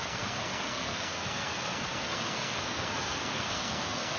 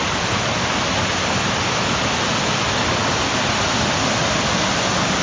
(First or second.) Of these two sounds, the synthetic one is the first